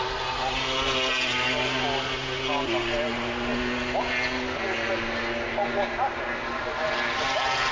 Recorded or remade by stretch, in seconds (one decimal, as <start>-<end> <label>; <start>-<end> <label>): 0.0-7.7 recorded